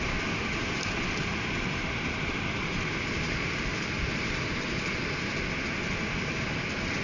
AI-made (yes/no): no